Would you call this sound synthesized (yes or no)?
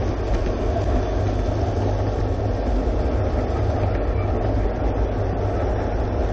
no